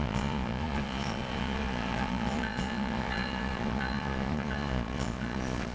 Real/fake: fake